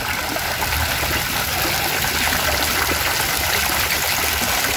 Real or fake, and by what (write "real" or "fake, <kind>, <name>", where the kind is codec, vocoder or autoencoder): real